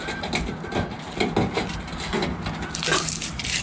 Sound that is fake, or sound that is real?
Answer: real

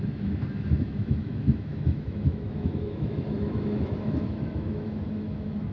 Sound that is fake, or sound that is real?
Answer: fake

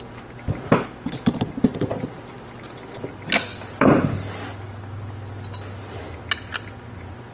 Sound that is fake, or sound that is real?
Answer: real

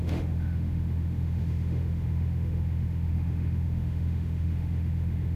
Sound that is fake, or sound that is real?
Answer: fake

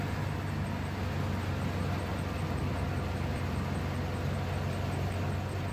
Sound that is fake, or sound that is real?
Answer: real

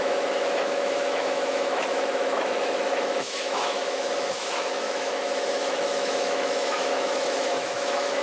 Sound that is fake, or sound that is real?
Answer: fake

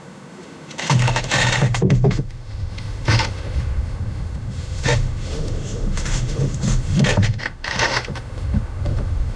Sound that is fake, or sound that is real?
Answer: fake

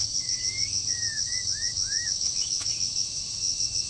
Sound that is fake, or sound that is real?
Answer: fake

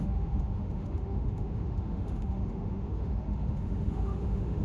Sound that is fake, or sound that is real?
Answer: fake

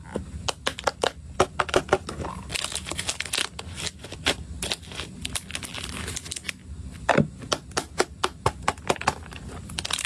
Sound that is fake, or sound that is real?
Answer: real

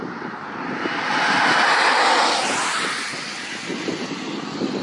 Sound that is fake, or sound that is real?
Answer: real